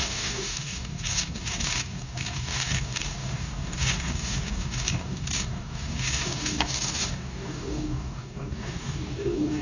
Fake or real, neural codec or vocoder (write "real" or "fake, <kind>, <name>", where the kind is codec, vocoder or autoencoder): fake, codec, DAC